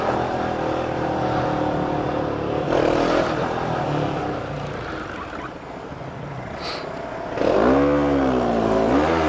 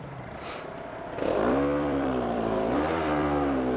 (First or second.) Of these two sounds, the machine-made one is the second